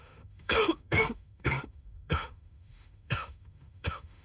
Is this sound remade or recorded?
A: remade